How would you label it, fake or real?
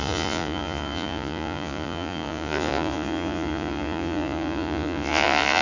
fake